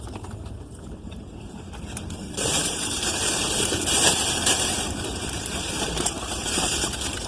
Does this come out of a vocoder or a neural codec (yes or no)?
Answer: yes